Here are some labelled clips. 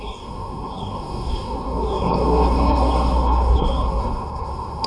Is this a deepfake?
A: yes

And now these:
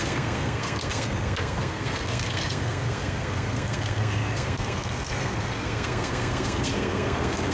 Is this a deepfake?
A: yes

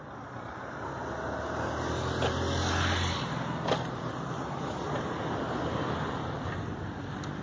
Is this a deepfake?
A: no